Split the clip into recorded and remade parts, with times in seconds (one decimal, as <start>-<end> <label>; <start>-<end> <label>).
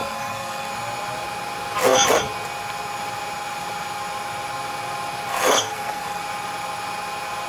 0.0-0.7 remade; 0.7-5.3 recorded; 5.3-6.2 remade; 6.2-7.5 recorded